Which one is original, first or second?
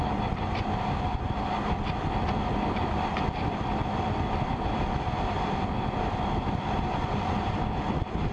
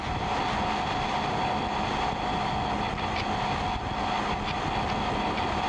second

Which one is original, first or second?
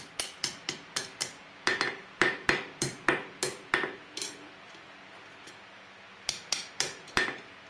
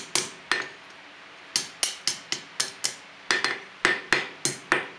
second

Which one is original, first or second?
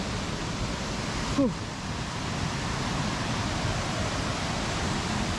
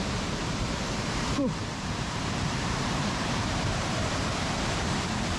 first